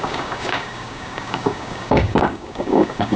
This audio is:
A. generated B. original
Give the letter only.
A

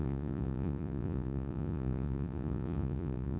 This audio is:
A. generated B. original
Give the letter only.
A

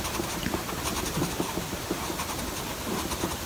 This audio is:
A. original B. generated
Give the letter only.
A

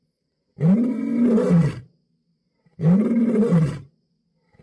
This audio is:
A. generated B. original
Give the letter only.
B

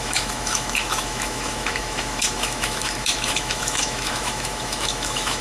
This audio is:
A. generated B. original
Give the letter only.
A